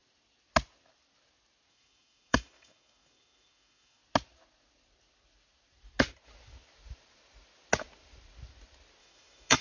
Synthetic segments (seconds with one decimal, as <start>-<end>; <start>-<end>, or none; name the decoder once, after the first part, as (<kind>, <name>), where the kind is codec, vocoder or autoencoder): 1.7-4.0 (autoencoder, DAC-VAE); 9.0-9.6